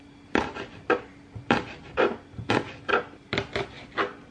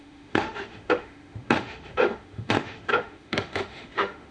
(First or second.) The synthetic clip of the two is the second